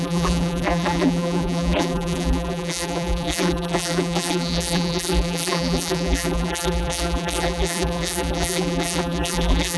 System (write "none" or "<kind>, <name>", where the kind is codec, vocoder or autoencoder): vocoder, BigVGAN v2